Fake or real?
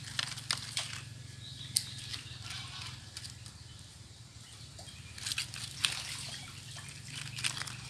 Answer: real